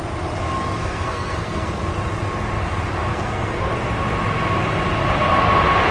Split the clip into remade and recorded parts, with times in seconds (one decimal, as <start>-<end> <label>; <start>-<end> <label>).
0.0-0.8 recorded; 0.8-1.7 remade; 1.7-3.1 recorded; 3.1-3.7 remade; 3.7-5.9 recorded